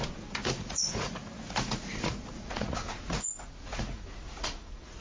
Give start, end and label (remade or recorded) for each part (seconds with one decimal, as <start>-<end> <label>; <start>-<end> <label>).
0.0-5.0 remade

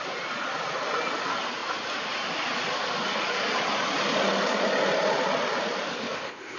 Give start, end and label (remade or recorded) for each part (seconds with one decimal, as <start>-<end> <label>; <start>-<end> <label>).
0.0-5.9 recorded; 5.9-6.6 remade

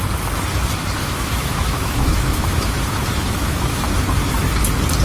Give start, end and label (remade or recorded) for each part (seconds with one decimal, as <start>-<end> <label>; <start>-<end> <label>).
0.0-1.0 recorded; 1.0-4.0 remade; 4.0-5.0 recorded

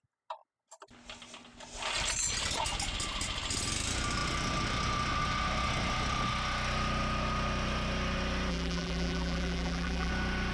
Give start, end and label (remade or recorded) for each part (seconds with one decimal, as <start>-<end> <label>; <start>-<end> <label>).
0.0-8.5 recorded; 8.5-10.1 remade; 10.1-10.5 recorded

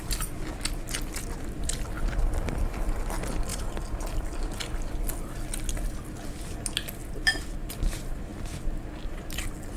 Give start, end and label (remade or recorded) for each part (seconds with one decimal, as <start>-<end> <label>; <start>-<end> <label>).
0.0-7.0 recorded; 7.0-7.8 remade; 7.8-8.3 recorded; 8.3-9.8 remade

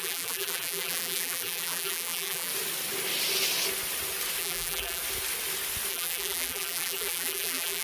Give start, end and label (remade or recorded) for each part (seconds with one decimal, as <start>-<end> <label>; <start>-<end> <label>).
0.0-2.5 remade; 2.5-4.4 recorded; 4.4-5.0 remade; 5.0-5.9 recorded; 5.9-7.8 remade